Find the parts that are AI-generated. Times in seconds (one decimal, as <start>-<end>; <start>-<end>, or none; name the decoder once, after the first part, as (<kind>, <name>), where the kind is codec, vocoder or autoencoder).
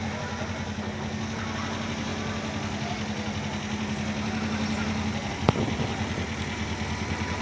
none